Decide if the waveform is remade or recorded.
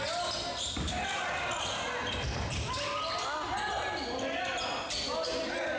recorded